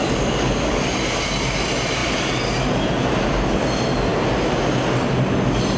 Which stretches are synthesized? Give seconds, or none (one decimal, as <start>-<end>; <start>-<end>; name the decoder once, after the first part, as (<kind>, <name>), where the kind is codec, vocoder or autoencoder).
0.0-0.8 (codec, DAC)